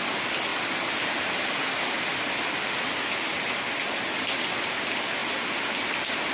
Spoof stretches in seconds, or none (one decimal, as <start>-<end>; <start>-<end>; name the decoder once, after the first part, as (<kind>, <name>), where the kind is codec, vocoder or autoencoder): none